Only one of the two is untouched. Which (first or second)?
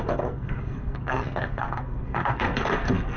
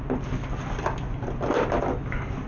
second